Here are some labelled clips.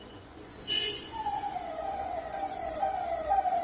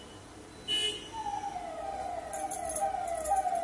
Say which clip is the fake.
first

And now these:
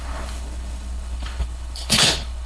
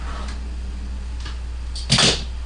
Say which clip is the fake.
first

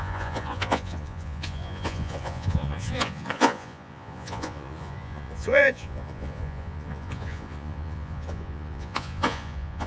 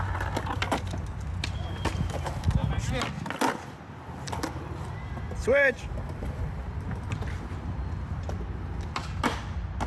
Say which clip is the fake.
first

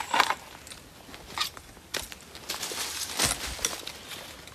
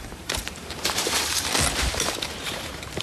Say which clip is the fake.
second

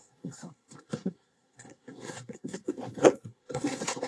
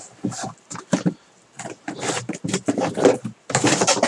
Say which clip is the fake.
first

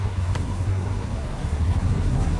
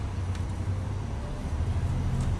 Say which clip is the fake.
first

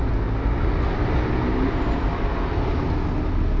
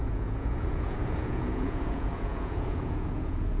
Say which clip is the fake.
second